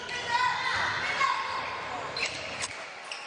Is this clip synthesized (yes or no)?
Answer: no